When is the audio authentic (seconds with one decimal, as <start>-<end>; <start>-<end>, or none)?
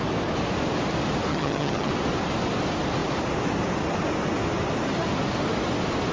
0.0-1.3; 1.9-6.1